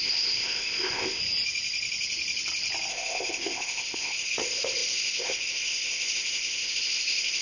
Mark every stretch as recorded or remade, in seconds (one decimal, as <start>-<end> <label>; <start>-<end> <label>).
0.0-1.2 remade; 1.2-2.9 recorded; 2.9-7.4 remade